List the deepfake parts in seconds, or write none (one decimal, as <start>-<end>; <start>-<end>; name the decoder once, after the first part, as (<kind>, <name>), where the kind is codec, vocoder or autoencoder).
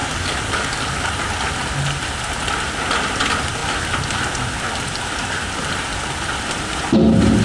0.0-1.3 (codec, DAC)